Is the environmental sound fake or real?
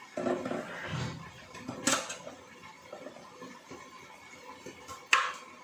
real